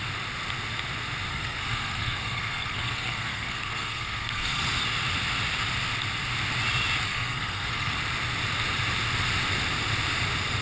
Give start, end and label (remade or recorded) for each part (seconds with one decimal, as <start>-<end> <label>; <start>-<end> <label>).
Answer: 0.0-1.3 recorded; 1.3-4.6 remade; 4.6-7.1 recorded; 7.1-7.9 remade; 7.9-10.6 recorded

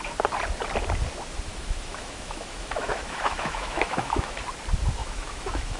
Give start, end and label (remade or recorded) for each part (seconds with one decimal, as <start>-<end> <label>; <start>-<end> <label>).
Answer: 0.0-1.5 recorded; 1.5-4.4 remade; 4.4-5.0 recorded; 5.0-5.8 remade

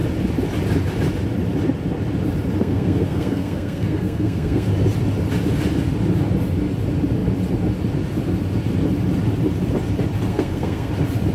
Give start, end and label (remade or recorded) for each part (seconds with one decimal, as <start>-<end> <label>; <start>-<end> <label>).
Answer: 0.0-2.6 recorded; 2.6-4.7 remade; 4.7-10.3 recorded; 10.3-10.9 remade; 10.9-11.3 recorded

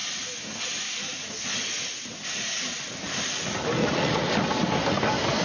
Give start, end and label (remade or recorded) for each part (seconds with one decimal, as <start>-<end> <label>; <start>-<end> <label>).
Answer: 0.0-3.8 recorded; 3.8-4.3 remade; 4.3-5.4 recorded

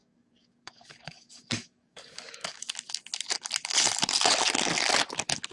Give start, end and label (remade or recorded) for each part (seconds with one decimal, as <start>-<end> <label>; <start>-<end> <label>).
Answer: 0.0-2.7 remade; 2.7-5.5 recorded

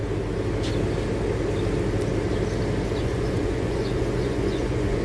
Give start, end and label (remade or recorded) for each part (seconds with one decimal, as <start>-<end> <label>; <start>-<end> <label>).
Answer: 0.0-3.0 recorded; 3.0-5.0 remade

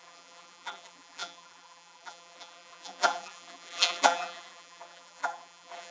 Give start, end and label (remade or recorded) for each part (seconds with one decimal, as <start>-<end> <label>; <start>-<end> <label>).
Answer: 0.0-5.9 remade

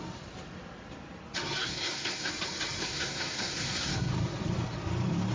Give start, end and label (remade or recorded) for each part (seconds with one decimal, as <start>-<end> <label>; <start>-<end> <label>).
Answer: 0.0-1.6 recorded; 1.6-2.3 remade; 2.3-2.8 recorded; 2.8-4.1 remade; 4.1-5.3 recorded